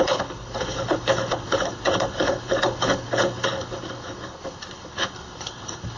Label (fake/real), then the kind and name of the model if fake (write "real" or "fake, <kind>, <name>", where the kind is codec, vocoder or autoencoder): fake, codec, HILCodec